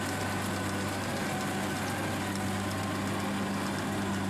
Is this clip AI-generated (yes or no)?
no